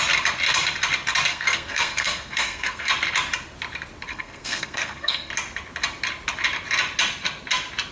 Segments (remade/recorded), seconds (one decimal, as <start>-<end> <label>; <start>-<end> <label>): 0.0-1.3 recorded; 1.3-2.9 remade; 2.9-4.1 recorded; 4.1-5.3 remade; 5.3-7.9 recorded